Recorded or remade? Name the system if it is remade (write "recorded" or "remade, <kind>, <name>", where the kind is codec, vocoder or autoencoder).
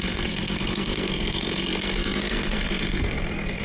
remade, codec, SNAC